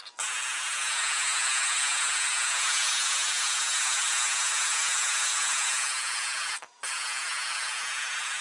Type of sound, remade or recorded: recorded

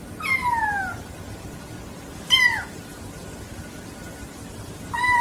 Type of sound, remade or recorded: recorded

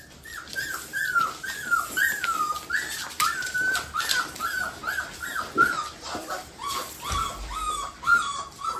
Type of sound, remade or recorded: recorded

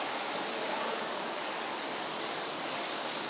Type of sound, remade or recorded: remade